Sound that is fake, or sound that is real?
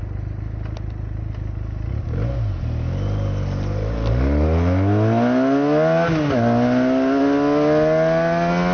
real